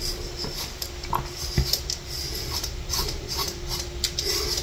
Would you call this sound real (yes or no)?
yes